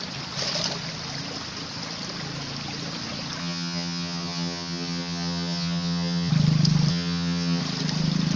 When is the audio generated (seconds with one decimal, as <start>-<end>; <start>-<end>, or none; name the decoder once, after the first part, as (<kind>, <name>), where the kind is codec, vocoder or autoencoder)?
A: 3.4-6.3 (vocoder, HiFi-GAN); 6.9-7.6